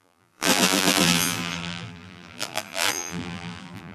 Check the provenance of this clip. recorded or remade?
remade